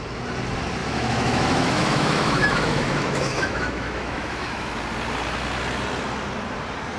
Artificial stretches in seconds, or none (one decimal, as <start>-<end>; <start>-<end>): 0.8-4.7